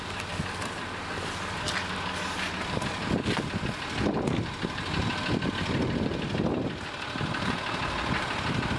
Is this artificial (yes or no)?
no